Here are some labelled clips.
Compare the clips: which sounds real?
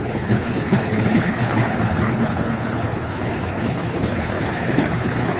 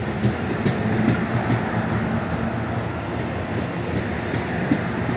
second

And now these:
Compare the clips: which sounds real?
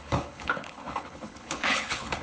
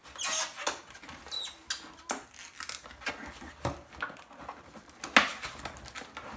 second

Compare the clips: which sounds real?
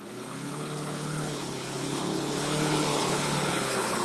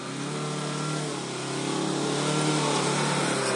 second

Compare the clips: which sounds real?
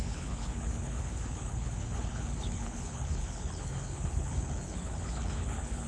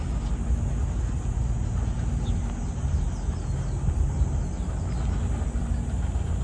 second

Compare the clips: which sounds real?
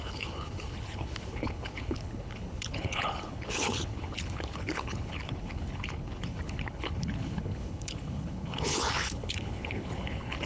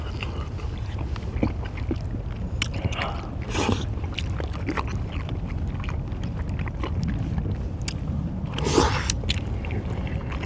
second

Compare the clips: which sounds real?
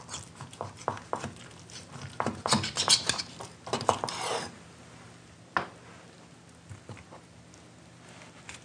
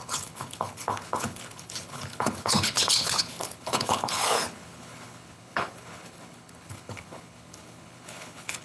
first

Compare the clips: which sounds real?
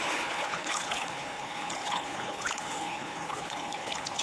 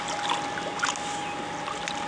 second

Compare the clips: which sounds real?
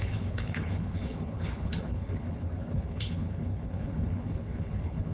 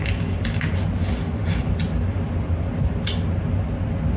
second